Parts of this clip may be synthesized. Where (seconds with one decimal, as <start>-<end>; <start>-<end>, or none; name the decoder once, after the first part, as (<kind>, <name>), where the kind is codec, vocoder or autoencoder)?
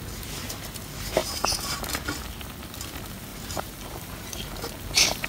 1.2-1.8 (vocoder, BigVGAN v2); 3.3-4.5